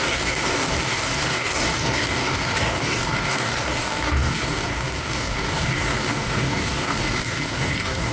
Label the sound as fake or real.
fake